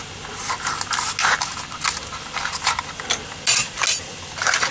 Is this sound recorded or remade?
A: recorded